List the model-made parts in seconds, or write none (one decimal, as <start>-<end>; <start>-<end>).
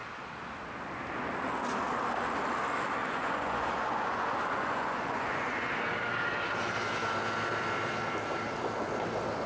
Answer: 3.0-5.5